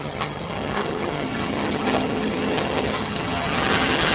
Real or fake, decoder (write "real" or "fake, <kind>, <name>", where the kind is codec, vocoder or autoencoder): fake, vocoder, HiFi-GAN